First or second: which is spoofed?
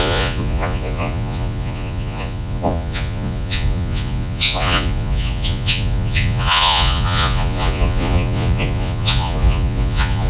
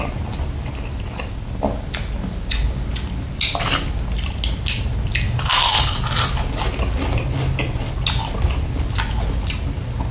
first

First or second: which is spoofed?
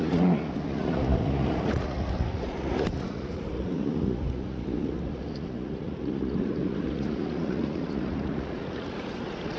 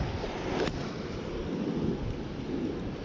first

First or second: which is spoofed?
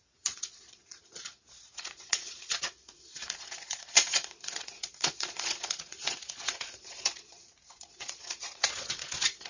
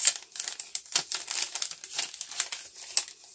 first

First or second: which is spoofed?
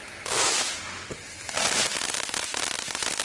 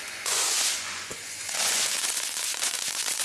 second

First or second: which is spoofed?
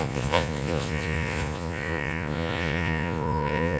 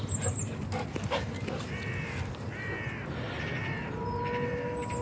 first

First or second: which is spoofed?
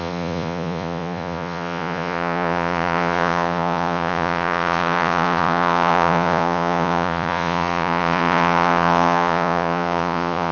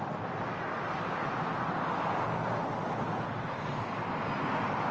first